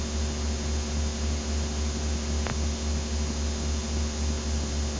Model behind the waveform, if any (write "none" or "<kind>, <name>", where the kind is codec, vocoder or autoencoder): none